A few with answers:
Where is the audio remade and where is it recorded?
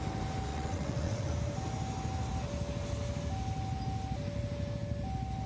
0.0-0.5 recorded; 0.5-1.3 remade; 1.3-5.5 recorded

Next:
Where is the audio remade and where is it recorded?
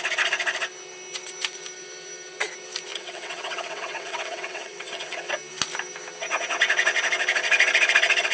0.0-2.9 recorded; 2.9-5.3 remade; 5.3-8.3 recorded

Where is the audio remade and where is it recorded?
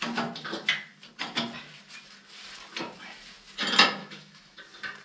0.0-4.0 recorded; 4.0-4.6 remade; 4.6-5.0 recorded